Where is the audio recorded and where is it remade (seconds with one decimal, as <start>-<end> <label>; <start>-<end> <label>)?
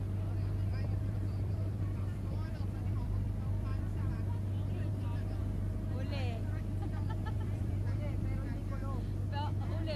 0.0-0.7 recorded; 0.7-4.1 remade; 4.1-7.2 recorded; 7.2-8.6 remade; 8.6-10.0 recorded